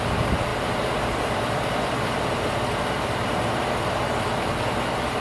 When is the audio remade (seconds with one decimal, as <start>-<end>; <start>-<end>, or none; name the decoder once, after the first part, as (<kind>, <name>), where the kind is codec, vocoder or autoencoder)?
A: 0.5-3.6 (vocoder, BigVGAN v2)